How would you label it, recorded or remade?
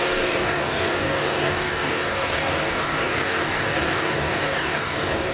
remade